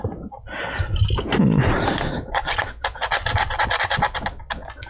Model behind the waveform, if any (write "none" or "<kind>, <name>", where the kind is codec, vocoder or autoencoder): none